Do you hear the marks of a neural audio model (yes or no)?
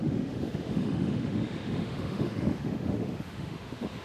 yes